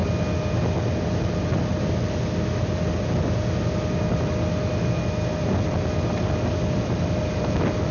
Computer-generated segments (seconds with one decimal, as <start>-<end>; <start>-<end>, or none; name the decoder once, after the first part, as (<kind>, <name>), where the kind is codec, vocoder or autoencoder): none